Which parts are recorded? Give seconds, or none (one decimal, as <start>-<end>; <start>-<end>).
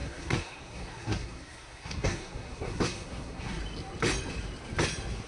3.6-5.3